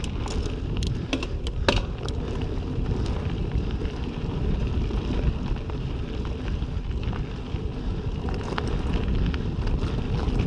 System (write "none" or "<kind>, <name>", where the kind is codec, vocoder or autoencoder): none